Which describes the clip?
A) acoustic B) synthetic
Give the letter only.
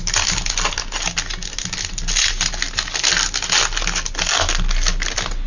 A